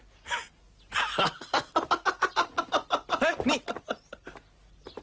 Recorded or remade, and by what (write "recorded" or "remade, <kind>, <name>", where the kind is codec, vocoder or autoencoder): recorded